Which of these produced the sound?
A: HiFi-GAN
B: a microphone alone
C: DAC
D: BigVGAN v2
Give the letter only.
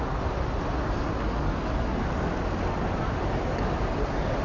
B